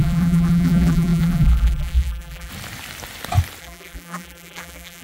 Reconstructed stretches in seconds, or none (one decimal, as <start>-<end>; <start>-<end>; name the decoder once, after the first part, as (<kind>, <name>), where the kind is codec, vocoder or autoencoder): 0.0-2.5 (vocoder, BigVGAN v2); 3.6-5.0